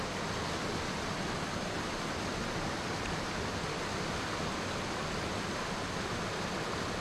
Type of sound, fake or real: real